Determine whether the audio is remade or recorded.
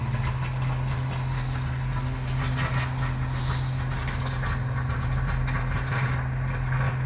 recorded